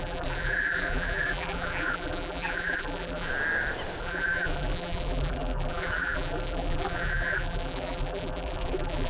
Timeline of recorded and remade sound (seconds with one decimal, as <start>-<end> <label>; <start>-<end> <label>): 0.0-3.3 remade; 3.3-4.0 recorded; 4.0-9.1 remade